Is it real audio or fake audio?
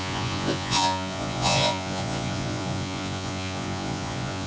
fake